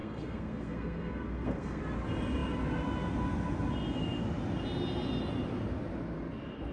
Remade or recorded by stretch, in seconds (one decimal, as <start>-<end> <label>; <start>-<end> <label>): 0.0-1.8 remade; 1.8-6.7 recorded